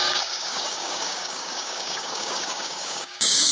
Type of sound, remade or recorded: remade